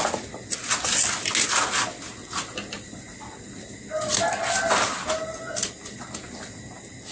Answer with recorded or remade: recorded